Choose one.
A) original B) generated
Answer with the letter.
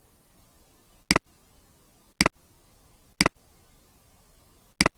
A